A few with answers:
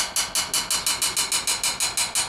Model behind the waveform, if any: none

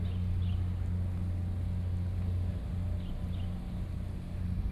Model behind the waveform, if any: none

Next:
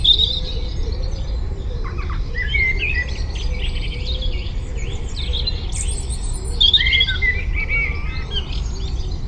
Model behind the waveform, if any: none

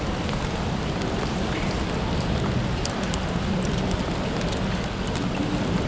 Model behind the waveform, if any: none